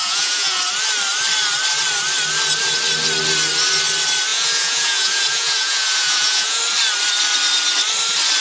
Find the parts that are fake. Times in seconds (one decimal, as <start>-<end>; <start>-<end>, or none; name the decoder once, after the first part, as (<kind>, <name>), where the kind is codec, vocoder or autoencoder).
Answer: 0.0-0.6 (vocoder, Vocos); 4.3-6.6